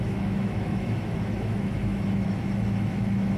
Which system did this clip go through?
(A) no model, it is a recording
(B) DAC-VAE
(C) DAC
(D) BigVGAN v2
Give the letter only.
B